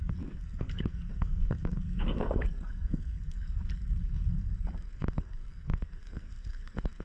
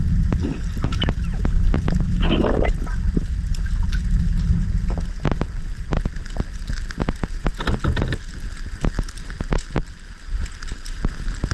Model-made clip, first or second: first